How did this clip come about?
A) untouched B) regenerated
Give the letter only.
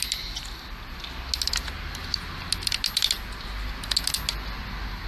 A